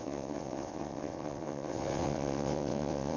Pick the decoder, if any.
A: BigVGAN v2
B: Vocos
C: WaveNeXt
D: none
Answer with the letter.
C